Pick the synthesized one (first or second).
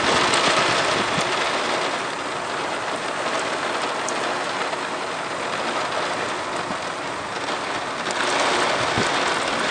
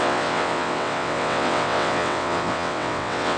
second